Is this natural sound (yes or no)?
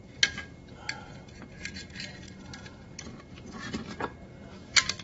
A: yes